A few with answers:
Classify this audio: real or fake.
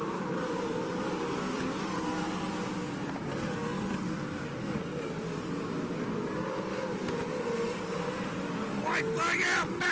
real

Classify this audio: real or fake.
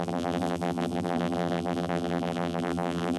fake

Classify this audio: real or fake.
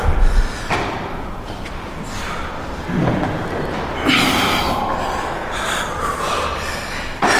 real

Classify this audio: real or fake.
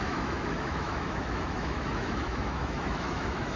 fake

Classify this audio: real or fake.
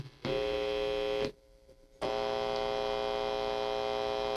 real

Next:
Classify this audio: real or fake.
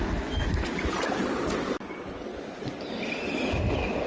real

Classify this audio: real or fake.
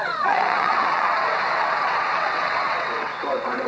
fake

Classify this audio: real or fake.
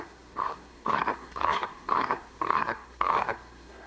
fake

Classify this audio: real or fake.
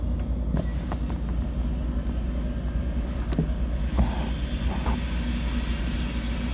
real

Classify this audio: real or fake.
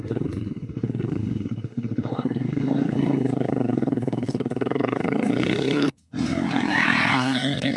fake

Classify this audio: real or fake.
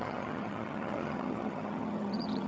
fake